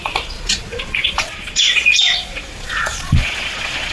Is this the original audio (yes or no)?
no